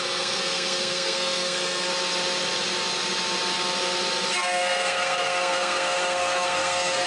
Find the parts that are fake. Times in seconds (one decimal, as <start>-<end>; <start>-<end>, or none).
0.0-1.9; 4.3-7.1